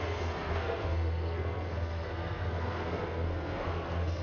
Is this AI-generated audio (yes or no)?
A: yes